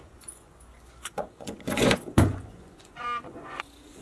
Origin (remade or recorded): remade